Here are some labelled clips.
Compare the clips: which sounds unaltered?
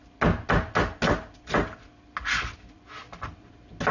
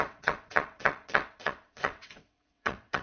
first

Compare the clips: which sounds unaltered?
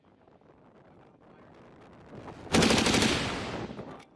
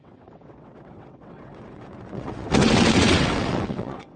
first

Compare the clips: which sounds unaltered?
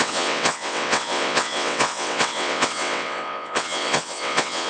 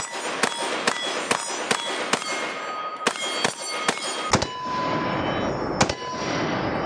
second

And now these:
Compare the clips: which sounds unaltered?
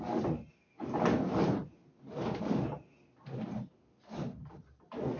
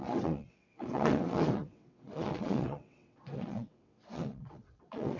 first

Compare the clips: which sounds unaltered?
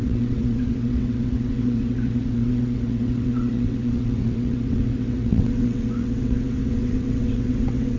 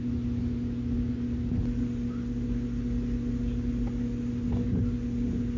second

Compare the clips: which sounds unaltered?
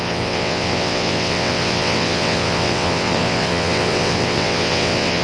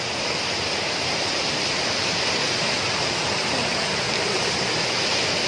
second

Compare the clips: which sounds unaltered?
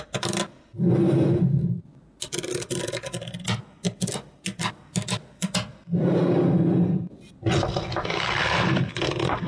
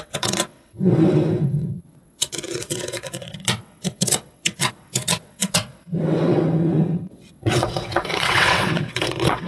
first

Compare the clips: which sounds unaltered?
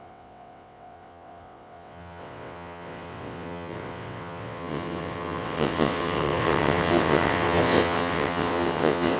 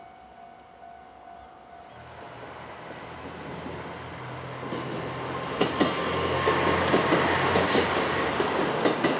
second